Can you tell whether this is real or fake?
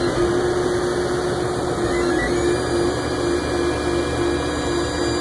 real